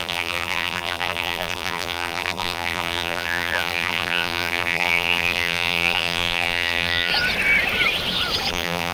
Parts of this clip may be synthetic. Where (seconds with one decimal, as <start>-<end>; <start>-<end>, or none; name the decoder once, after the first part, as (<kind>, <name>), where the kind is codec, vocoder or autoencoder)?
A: 0.0-7.1 (vocoder, BigVGAN v2); 8.5-8.9